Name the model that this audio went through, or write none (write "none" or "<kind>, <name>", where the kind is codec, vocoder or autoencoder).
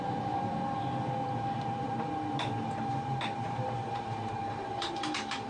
vocoder, BigVGAN v2